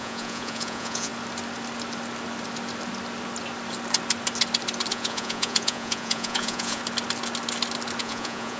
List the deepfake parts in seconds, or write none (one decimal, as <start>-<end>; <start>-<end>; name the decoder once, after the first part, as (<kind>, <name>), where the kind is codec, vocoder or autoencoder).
0.0-1.1 (vocoder, Vocos); 4.9-6.8; 8.0-8.6